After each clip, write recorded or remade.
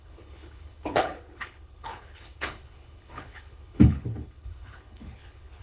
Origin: remade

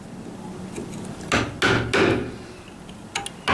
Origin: recorded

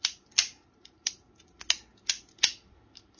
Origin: recorded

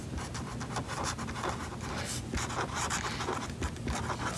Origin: recorded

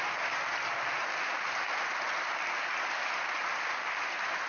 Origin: recorded